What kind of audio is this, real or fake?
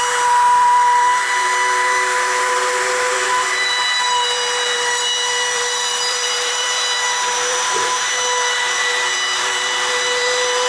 fake